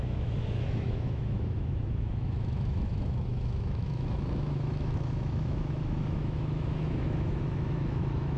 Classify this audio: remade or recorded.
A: remade